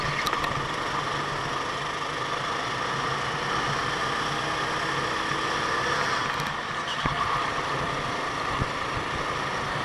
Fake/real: real